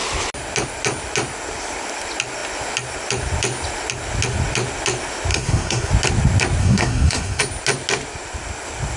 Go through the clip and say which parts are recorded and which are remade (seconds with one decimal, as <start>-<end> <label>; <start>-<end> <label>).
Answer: 0.0-5.3 recorded; 5.3-5.9 remade; 5.9-6.6 recorded; 6.6-7.4 remade; 7.4-9.0 recorded

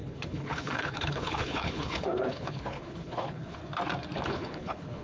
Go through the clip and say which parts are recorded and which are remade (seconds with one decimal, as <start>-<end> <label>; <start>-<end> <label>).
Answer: 0.0-3.6 remade; 3.6-4.3 recorded; 4.3-5.0 remade

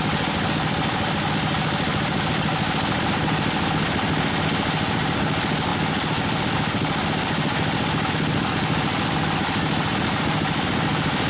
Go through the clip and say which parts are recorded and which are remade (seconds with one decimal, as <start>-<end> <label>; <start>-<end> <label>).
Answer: 0.0-11.3 recorded

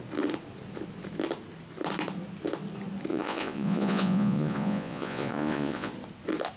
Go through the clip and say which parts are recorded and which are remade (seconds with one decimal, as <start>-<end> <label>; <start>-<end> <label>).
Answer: 0.0-3.1 recorded; 3.1-5.9 remade; 5.9-6.6 recorded